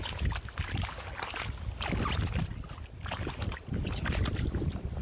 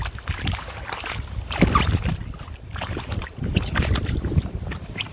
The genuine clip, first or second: first